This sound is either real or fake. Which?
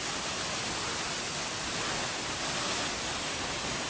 real